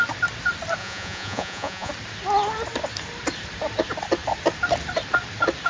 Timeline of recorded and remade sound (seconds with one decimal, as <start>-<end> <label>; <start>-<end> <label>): 0.0-0.8 recorded; 0.8-1.9 remade; 1.9-5.7 recorded